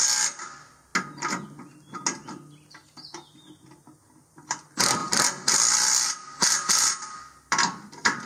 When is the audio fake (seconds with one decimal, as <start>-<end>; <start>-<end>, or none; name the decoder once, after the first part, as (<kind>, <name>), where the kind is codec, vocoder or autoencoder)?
0.0-0.9 (vocoder, BigVGAN v2); 4.3-8.3